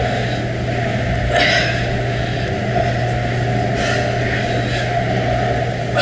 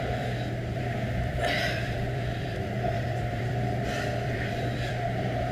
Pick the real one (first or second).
first